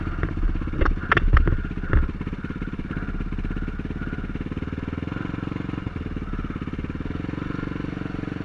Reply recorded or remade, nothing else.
recorded